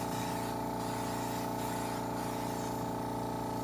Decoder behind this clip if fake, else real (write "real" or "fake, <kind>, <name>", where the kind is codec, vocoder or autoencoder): real